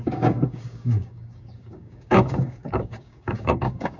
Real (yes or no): no